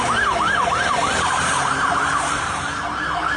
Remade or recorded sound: remade